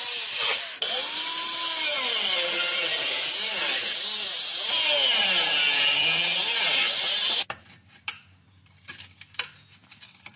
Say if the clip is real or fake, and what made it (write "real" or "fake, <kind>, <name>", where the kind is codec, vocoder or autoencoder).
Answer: real